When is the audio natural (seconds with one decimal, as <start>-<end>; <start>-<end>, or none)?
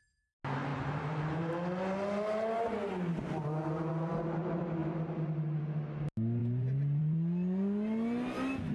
0.0-0.7; 1.5-6.4; 7.0-8.7